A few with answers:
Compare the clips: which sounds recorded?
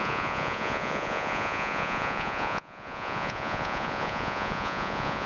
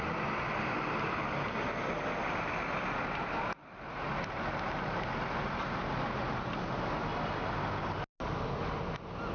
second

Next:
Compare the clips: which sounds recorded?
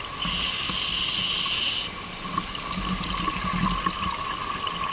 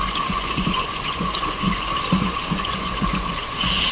first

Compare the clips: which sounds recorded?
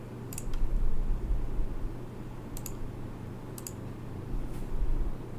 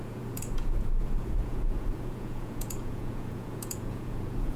first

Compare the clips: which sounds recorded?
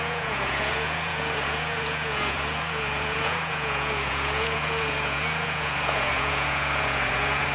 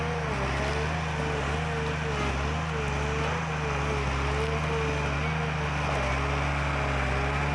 second